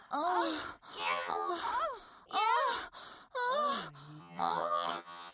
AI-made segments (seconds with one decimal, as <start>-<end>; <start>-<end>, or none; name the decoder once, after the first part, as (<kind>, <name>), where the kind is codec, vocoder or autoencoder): 1.0-1.5 (vocoder, HiFi-GAN); 4.2-5.3